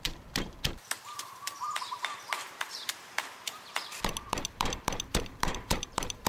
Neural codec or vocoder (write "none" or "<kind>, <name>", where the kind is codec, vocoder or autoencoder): vocoder, BigVGAN v2